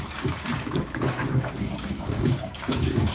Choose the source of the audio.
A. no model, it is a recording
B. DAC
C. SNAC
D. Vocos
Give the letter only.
B